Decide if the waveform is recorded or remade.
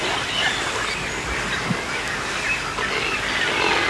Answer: recorded